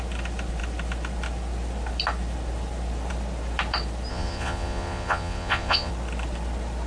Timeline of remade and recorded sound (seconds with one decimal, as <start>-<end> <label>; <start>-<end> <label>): 0.0-4.1 recorded; 4.1-5.9 remade; 5.9-6.9 recorded